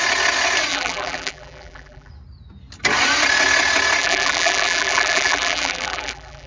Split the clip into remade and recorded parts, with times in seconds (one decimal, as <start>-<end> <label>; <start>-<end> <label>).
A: 0.0-0.7 recorded; 0.7-2.1 remade; 2.1-4.0 recorded; 4.0-6.5 remade